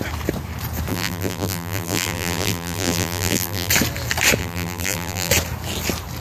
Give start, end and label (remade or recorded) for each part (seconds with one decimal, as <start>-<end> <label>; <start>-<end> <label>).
0.0-0.9 recorded; 0.9-3.7 remade; 3.7-4.4 recorded; 4.4-5.3 remade; 5.3-6.2 recorded